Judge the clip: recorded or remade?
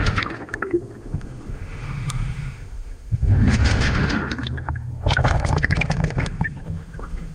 remade